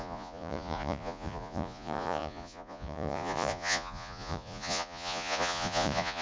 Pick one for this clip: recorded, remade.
remade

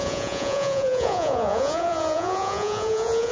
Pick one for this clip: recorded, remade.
remade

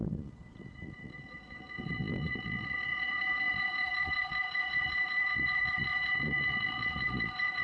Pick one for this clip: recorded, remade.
remade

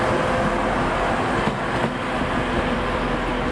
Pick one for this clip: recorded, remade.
recorded